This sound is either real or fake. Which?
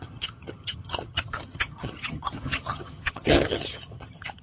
fake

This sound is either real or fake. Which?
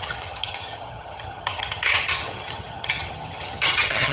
fake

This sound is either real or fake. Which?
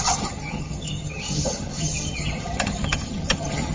fake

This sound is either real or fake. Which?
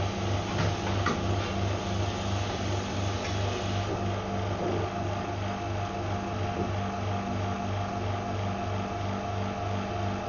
real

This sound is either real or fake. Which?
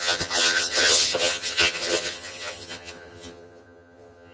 fake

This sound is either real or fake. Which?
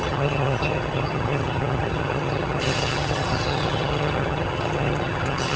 fake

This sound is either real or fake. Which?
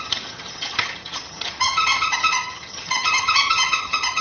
fake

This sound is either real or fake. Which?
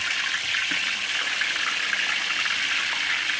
real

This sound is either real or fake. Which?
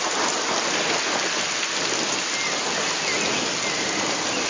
real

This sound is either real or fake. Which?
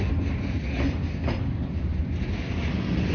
real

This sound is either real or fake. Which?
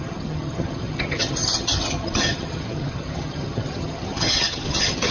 fake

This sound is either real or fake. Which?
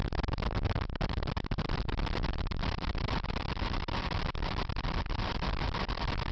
real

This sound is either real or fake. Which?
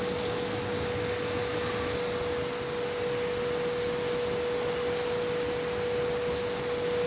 real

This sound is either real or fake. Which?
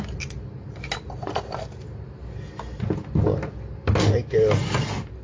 real